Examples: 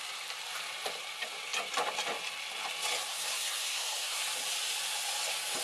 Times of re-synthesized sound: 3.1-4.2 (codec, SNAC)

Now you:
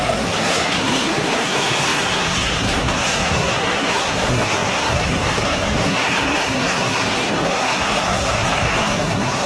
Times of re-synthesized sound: 0.0-9.5 (codec, SNAC)

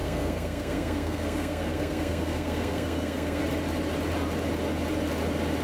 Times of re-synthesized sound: 0.0-3.4 (codec, SNAC)

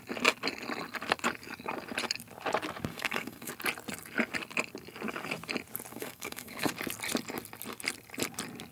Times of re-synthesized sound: 2.9-3.5 (codec, SNAC); 5.9-6.7